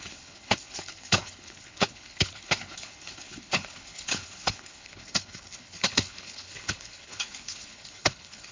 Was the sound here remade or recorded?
remade